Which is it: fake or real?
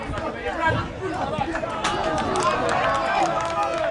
real